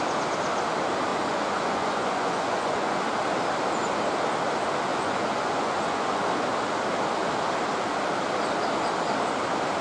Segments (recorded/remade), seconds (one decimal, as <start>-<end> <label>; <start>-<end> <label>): 0.0-1.1 recorded; 1.1-3.0 remade; 3.0-4.9 recorded; 4.9-6.2 remade; 6.2-9.8 recorded

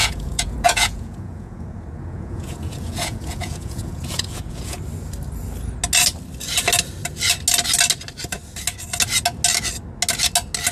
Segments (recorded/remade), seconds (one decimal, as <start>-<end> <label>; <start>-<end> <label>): 0.0-4.8 remade; 4.8-10.7 recorded

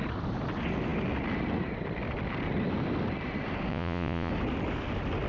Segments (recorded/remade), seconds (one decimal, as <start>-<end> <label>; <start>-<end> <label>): 0.0-3.7 recorded; 3.7-4.3 remade; 4.3-5.3 recorded

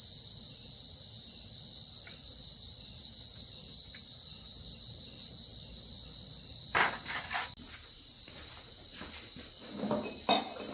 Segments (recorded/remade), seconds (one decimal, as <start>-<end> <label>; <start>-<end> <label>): 0.0-10.7 recorded